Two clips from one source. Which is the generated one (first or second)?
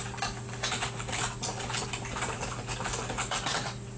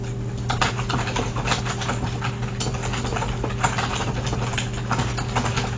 second